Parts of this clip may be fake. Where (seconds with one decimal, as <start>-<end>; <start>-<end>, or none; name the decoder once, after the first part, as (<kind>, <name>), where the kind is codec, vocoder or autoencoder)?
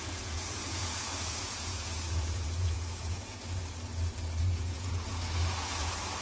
0.0-3.6 (vocoder, Vocos); 4.4-6.2